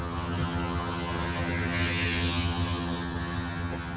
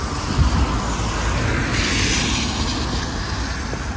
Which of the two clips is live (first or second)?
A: second